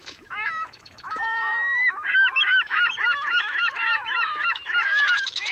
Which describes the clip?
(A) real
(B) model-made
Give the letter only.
B